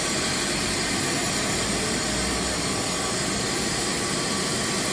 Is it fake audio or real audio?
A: real